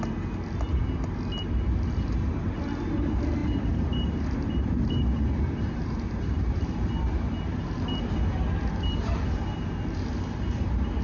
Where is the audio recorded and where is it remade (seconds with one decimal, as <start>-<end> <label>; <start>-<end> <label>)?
0.0-3.4 recorded; 3.4-6.8 remade; 6.8-11.0 recorded